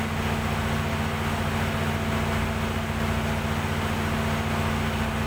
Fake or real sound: real